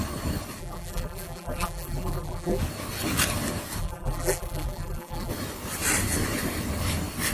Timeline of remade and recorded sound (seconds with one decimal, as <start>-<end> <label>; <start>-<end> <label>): 0.0-0.6 recorded; 0.6-2.6 remade; 2.6-3.8 recorded; 3.8-5.3 remade; 5.3-7.3 recorded